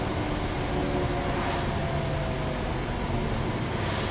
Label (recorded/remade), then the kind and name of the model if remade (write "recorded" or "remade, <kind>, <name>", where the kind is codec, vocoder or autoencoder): recorded